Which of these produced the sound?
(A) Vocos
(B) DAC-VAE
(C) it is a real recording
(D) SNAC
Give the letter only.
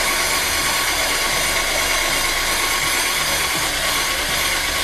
C